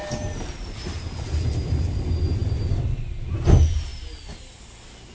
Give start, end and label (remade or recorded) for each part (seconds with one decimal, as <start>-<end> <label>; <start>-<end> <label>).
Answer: 0.0-2.0 remade; 2.0-5.1 recorded